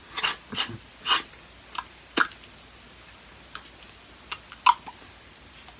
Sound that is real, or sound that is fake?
real